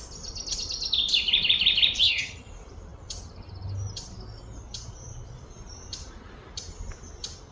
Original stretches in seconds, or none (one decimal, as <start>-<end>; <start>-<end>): 0.0-2.0; 2.5-7.5

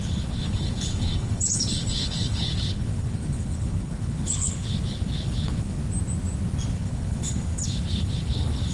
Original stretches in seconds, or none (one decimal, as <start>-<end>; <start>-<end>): 5.8-6.7

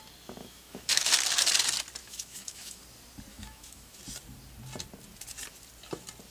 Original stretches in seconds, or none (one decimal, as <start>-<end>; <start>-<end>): 0.0-0.4; 1.1-2.0; 2.8-3.3; 4.0-6.3

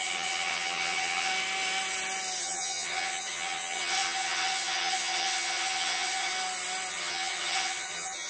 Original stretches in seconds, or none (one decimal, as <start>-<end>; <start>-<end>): 1.3-2.4; 6.3-6.9